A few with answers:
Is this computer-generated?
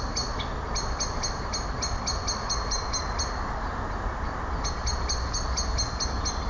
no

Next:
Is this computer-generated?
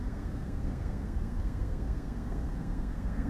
yes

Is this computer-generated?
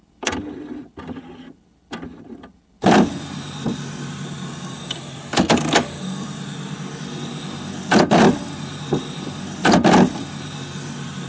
no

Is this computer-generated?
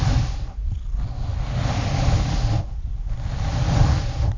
no